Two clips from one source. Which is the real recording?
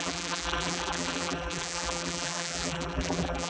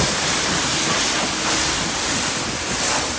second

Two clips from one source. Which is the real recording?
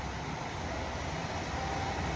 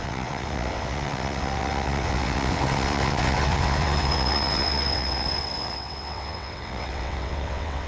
first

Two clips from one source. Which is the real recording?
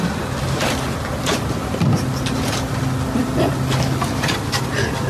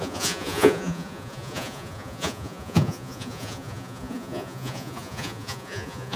first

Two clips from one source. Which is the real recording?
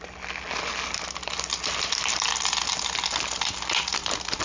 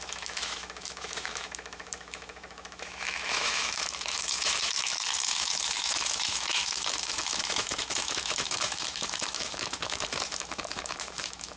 first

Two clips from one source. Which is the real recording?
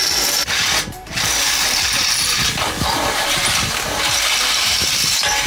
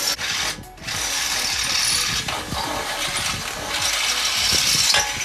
second